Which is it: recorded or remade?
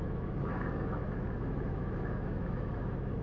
remade